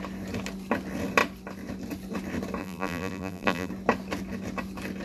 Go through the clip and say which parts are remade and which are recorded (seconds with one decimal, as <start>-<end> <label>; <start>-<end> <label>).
0.0-2.6 recorded; 2.6-3.7 remade; 3.7-5.0 recorded